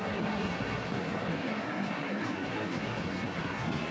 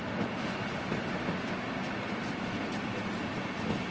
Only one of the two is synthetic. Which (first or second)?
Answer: first